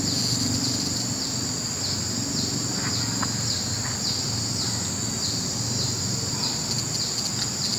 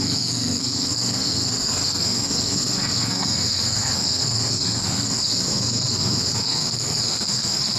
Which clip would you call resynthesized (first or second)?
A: second